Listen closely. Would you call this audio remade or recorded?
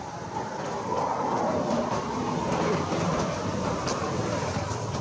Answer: remade